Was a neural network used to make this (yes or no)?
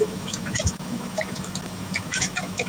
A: yes